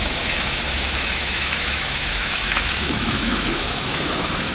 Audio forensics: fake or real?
fake